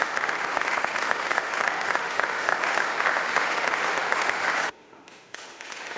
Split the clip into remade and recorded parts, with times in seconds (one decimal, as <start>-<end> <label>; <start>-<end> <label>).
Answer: 0.0-6.0 remade